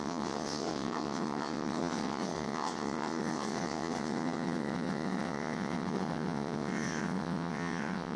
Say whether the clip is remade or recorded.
remade